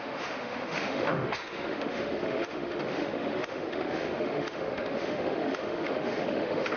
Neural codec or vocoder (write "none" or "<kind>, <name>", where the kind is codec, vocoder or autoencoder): autoencoder, DAC-VAE